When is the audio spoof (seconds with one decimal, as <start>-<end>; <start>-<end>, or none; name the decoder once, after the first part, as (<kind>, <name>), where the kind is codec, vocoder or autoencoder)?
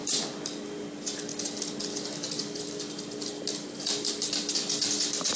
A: none